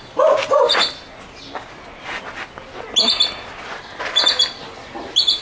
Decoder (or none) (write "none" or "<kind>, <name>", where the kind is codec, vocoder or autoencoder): none